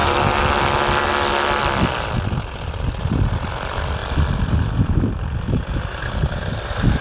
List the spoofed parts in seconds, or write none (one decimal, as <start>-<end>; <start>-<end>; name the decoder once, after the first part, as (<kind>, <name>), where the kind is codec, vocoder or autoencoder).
none